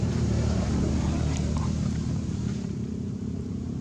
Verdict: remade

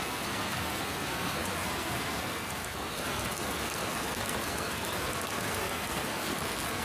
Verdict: remade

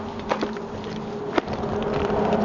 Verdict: recorded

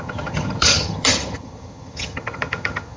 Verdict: remade